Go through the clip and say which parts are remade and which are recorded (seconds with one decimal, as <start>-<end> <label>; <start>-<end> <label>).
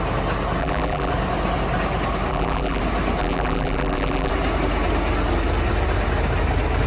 0.0-0.6 recorded; 0.6-1.1 remade; 1.1-2.3 recorded; 2.3-2.8 remade; 2.8-3.2 recorded; 3.2-4.3 remade; 4.3-6.9 recorded